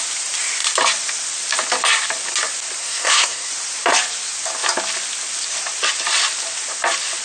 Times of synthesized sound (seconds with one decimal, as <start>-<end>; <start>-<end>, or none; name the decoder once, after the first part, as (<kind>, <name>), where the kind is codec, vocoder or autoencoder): 2.8-3.5 (codec, SNAC)